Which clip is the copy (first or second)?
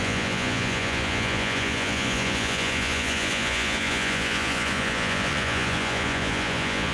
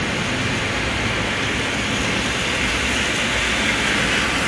first